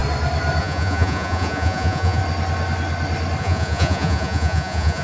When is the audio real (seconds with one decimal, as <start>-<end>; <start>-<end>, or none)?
0.0-0.6; 2.2-3.4